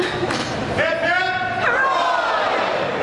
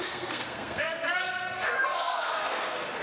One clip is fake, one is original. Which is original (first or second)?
first